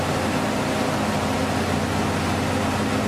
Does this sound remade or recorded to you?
recorded